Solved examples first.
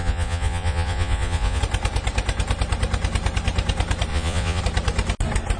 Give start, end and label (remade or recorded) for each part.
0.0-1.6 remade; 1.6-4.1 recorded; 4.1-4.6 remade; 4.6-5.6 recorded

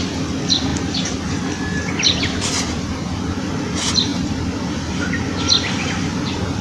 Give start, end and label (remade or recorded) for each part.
0.0-6.6 recorded

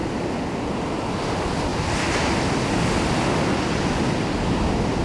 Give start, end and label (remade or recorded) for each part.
0.0-5.0 recorded

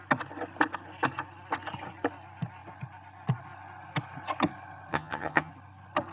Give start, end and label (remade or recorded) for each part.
0.0-4.9 recorded; 4.9-5.5 remade; 5.5-6.1 recorded

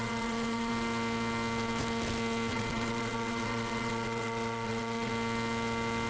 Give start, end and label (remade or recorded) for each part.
0.0-0.7 remade; 0.7-2.5 recorded; 2.5-5.1 remade; 5.1-6.1 recorded